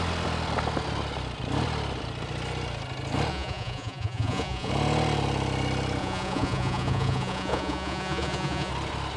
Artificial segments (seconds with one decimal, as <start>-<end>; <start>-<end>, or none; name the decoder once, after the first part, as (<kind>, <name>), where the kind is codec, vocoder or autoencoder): 3.3-4.7 (vocoder, Vocos); 6.0-8.7